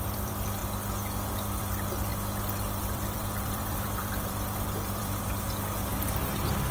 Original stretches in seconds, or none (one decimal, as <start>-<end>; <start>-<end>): 0.6-1.3; 2.1-2.8; 5.9-6.7